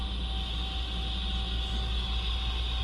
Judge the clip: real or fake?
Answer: real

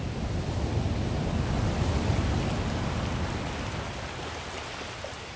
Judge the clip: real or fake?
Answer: real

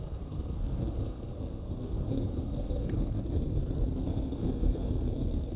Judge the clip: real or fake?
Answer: fake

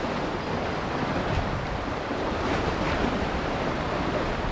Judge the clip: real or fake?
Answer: real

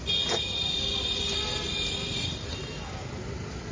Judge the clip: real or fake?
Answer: real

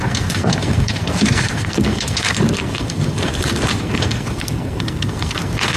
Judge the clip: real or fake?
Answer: fake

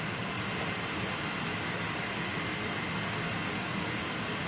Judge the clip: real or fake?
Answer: real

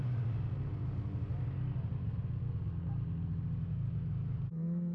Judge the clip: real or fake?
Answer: real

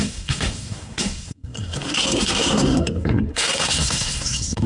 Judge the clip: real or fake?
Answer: fake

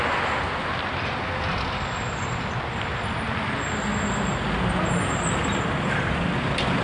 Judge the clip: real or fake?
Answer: real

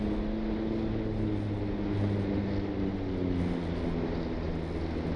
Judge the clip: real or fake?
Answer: real